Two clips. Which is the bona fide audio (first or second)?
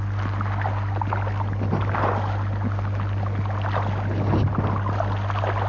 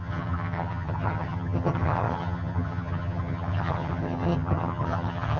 first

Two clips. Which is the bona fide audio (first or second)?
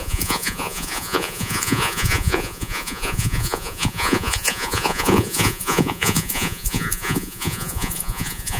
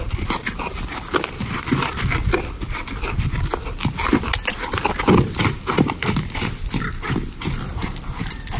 second